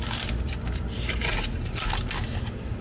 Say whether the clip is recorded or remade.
recorded